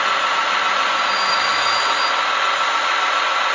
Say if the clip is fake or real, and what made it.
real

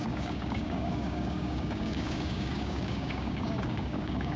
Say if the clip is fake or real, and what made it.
fake, codec, DAC